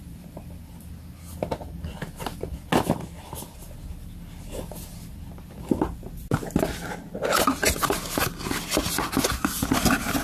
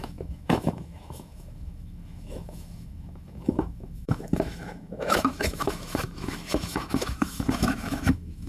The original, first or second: first